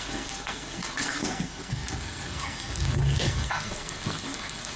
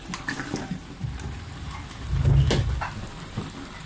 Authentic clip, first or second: second